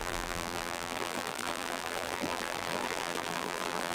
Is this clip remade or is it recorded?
remade